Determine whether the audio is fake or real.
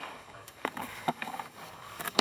fake